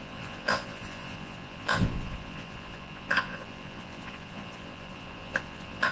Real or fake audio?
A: fake